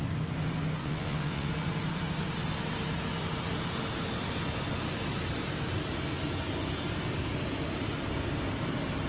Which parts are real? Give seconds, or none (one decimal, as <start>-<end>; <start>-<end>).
0.0-0.8; 1.5-9.1